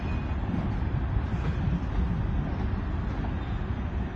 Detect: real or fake real